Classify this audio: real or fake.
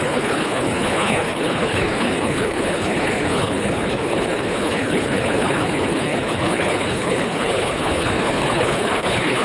fake